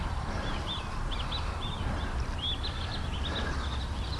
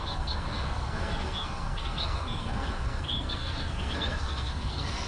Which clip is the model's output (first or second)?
second